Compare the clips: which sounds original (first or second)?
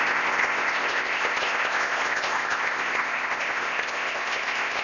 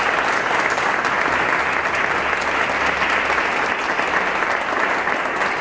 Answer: second